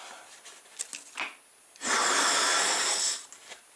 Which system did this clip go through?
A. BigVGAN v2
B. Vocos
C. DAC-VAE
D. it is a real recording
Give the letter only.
D